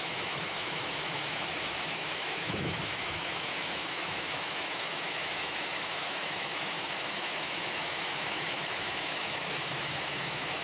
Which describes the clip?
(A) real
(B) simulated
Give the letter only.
B